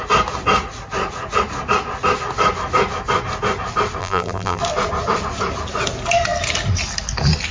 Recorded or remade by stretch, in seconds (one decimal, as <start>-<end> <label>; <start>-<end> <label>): 0.0-4.0 recorded; 4.0-4.6 remade; 4.6-7.5 recorded